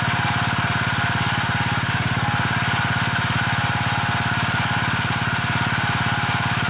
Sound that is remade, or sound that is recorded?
recorded